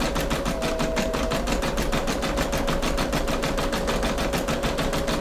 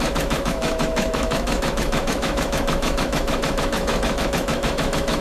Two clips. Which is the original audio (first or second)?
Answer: first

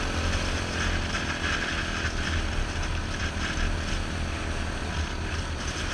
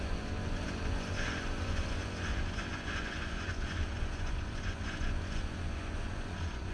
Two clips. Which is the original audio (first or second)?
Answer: first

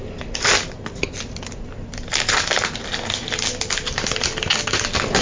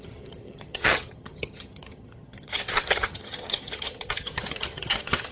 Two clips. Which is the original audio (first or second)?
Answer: first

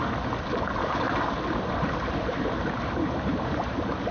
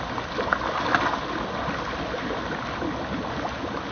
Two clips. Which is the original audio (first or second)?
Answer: second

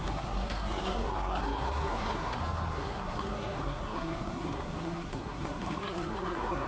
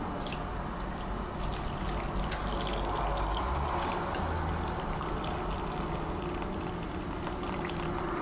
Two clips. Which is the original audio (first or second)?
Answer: second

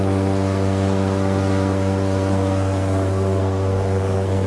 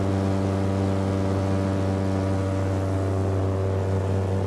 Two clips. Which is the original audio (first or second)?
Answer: second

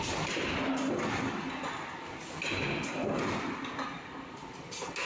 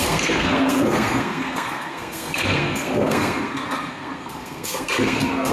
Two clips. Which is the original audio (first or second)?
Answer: first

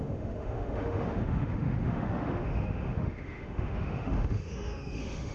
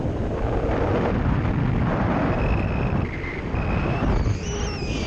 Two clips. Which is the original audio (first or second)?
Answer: second